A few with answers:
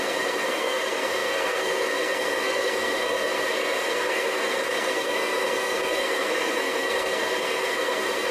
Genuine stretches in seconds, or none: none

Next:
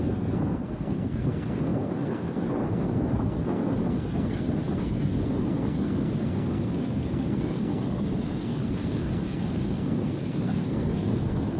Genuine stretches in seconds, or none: none

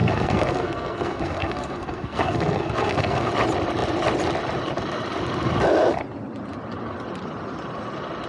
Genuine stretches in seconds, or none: 3.3-8.3

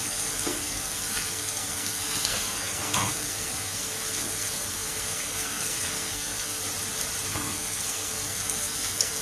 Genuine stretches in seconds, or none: 6.6-7.3

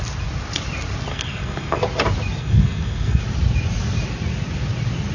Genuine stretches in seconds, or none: 0.0-1.1; 1.8-2.4; 3.2-5.1

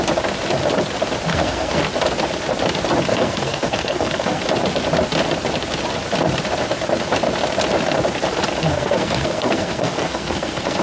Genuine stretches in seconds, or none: 0.0-1.3; 1.8-3.1; 4.4-8.6

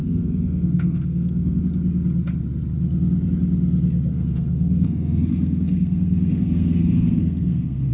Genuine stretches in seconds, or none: 1.6-4.1